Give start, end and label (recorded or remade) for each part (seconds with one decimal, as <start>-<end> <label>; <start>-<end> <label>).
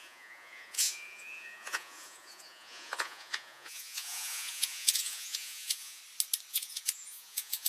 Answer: 0.0-6.0 remade; 6.0-6.5 recorded; 6.5-7.7 remade